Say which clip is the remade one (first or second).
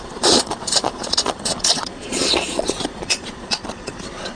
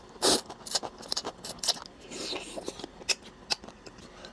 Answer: first